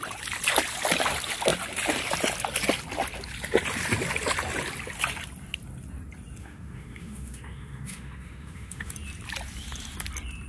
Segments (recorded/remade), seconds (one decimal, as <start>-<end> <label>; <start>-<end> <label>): 0.0-6.4 recorded; 6.4-8.9 remade; 8.9-10.5 recorded